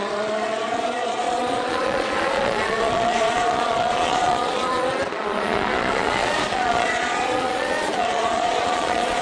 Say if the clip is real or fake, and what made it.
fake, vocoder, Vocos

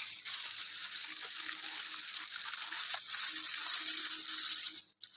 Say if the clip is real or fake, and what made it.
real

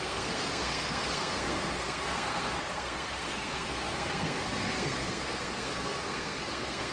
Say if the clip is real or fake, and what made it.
fake, codec, SNAC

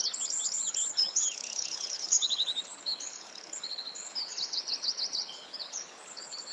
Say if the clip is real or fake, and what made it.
fake, codec, HILCodec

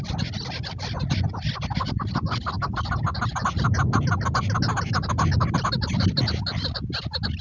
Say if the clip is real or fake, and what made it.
real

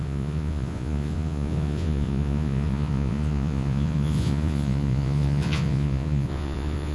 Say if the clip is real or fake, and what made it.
fake, vocoder, Vocos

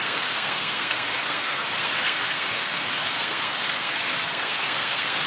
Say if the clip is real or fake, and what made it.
fake, codec, SNAC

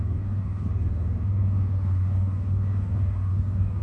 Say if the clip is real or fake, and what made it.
fake, codec, DAC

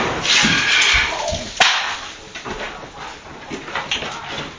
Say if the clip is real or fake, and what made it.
real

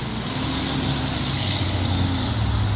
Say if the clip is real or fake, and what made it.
real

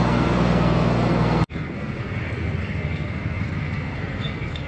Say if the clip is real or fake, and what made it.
fake, codec, SNAC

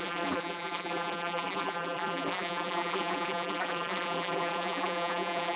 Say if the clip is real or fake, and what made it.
fake, vocoder, BigVGAN v2